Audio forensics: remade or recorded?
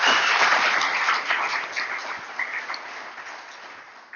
recorded